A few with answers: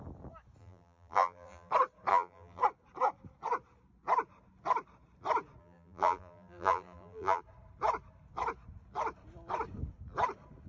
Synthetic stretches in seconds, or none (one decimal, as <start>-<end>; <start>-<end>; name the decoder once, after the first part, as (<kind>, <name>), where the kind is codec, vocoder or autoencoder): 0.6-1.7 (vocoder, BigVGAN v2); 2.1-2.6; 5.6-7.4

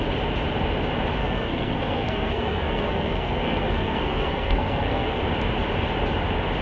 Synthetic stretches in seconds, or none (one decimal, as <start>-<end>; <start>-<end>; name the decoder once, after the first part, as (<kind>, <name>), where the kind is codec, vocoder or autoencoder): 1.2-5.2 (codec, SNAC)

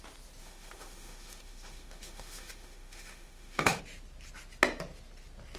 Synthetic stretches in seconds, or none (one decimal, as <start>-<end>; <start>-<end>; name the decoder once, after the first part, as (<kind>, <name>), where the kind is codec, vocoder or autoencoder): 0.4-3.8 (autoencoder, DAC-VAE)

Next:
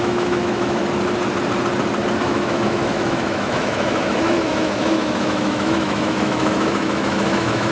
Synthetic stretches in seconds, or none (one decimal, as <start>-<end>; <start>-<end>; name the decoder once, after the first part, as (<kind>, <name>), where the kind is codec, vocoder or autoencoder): 0.0-0.8 (autoencoder, DAC-VAE); 2.2-7.7

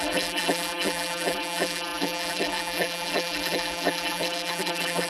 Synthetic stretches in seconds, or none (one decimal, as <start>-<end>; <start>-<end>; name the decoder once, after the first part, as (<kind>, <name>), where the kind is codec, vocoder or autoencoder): 0.0-5.1 (vocoder, BigVGAN v2)

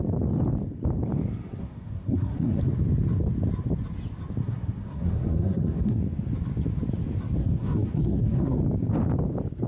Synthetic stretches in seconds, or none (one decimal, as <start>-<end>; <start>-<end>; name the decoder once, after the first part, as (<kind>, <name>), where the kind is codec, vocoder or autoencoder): 1.6-2.6 (codec, SNAC); 4.4-6.0; 7.4-8.6

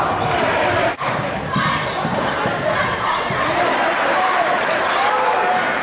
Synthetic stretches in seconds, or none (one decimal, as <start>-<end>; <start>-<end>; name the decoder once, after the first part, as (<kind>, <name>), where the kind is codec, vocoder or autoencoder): 0.8-4.3 (vocoder, BigVGAN v2)

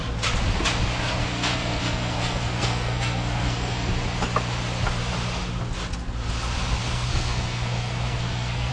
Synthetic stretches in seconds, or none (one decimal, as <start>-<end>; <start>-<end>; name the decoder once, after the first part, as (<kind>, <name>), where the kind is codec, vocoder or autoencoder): 1.2-3.9 (codec, SNAC); 6.8-8.7